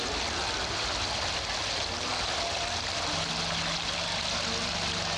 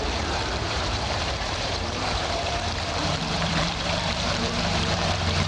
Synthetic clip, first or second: second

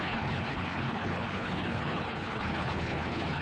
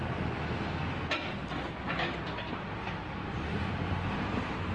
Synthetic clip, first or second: first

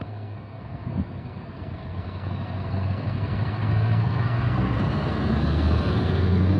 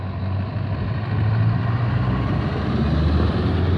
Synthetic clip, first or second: first